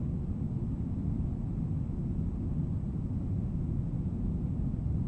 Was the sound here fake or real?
real